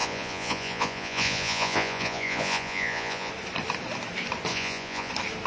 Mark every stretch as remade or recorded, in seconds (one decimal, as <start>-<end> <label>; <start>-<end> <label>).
0.0-3.3 remade; 3.3-4.5 recorded; 4.5-5.1 remade; 5.1-5.5 recorded